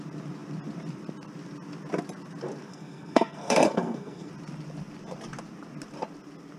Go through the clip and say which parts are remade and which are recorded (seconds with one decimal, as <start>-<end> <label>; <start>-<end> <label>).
0.0-2.7 recorded; 2.7-4.3 remade; 4.3-6.6 recorded